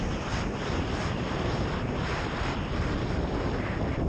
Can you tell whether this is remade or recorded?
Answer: remade